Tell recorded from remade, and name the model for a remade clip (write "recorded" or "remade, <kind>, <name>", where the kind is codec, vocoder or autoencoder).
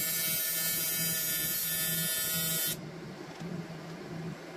recorded